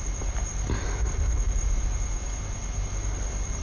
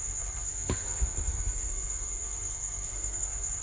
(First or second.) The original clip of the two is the first